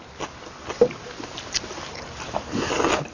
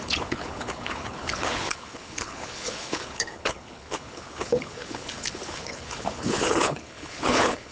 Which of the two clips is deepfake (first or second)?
second